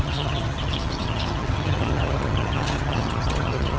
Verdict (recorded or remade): remade